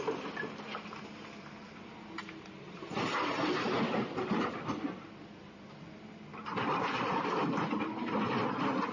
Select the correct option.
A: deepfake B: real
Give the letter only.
B